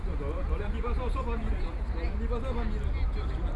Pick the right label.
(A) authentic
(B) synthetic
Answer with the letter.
A